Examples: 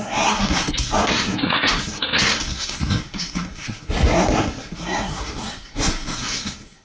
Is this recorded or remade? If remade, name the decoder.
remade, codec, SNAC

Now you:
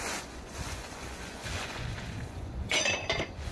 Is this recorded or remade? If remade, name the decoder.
remade, vocoder, Vocos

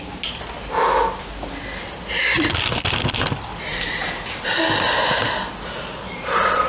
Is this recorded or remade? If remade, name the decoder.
recorded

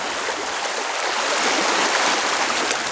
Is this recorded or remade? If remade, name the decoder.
recorded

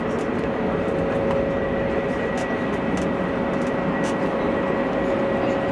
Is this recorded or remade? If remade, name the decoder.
recorded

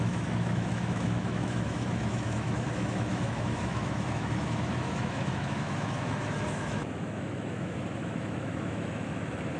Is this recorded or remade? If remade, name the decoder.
remade, autoencoder, DAC-VAE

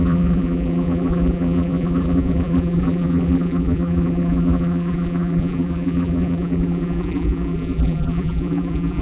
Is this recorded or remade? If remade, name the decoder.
remade, vocoder, BigVGAN v2